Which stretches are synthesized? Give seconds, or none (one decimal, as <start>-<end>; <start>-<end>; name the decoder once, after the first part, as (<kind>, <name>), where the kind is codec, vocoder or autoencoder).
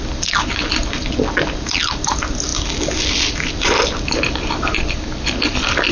none